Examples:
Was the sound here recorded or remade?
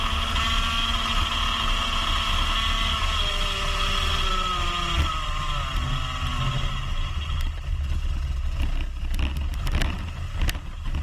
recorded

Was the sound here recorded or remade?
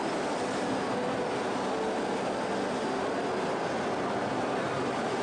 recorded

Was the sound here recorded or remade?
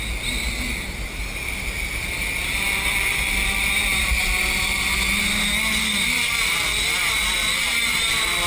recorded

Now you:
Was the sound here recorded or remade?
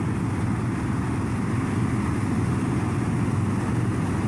recorded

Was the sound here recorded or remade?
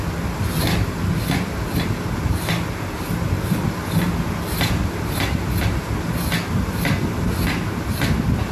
recorded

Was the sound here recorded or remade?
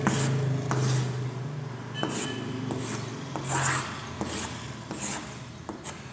recorded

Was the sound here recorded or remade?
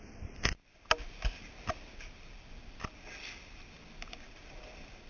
recorded